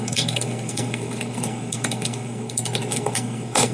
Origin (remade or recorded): remade